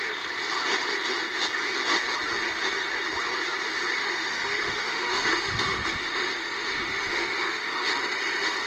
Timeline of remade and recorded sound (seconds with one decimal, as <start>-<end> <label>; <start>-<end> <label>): 0.0-4.0 recorded; 4.0-7.9 remade; 7.9-8.7 recorded